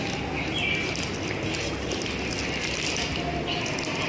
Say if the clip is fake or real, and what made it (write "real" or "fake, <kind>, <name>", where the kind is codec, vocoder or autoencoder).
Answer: real